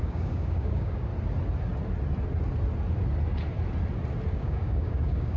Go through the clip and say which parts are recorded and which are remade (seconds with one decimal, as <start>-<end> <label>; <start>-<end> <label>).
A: 0.0-1.1 remade; 1.1-4.3 recorded; 4.3-5.4 remade

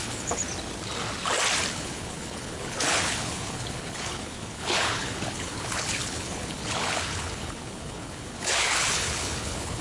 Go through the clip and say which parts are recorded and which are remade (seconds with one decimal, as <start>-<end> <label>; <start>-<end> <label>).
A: 0.0-0.4 remade; 0.4-1.7 recorded; 1.7-9.8 remade